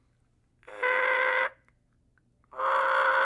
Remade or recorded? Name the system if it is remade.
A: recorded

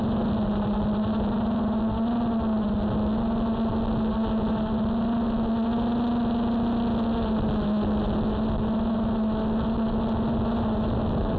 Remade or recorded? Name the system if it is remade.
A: recorded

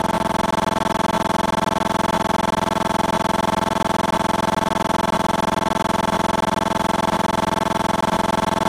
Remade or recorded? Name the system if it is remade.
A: recorded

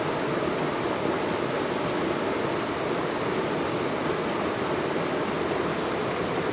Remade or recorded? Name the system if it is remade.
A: recorded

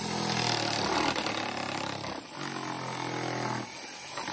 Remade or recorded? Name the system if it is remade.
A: recorded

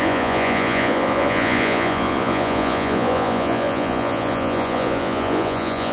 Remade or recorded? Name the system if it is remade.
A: remade, vocoder, Vocos